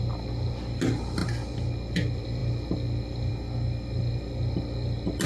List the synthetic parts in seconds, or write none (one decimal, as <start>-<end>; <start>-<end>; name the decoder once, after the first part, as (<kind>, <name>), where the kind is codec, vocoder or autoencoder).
none